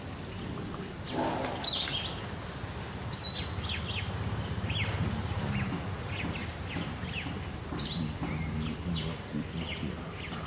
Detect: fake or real real